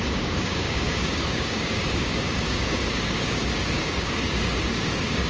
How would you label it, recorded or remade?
remade